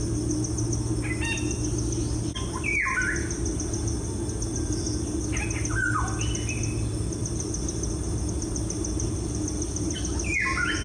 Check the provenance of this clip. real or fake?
real